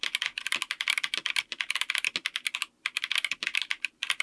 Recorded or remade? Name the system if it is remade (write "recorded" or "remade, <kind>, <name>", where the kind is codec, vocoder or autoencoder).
recorded